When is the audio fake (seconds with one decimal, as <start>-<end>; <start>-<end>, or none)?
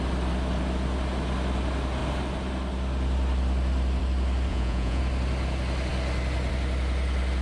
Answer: 4.5-5.0